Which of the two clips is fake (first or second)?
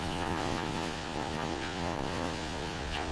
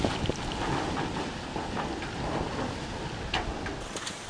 first